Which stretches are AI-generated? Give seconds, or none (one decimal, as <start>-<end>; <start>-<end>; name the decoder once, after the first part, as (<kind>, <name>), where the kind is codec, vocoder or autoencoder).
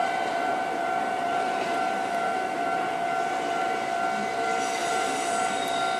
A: 0.0-3.6 (vocoder, BigVGAN v2); 4.8-5.5